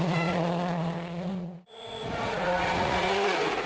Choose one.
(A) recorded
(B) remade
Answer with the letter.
B